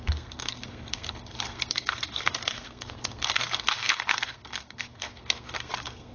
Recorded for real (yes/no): no